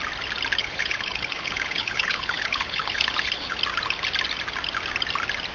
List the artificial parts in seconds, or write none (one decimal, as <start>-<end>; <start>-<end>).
0.6-3.6